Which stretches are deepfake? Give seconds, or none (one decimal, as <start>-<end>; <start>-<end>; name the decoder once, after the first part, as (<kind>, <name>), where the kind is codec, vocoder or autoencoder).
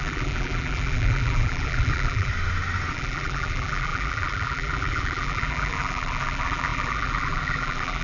0.0-2.3 (vocoder, BigVGAN v2); 2.9-8.0